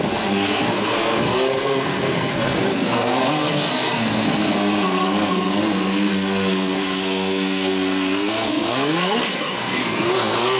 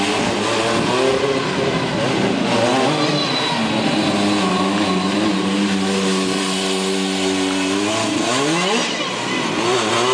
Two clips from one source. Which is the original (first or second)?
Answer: second